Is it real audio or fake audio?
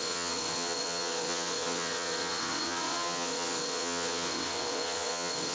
fake